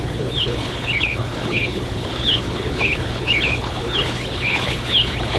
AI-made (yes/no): yes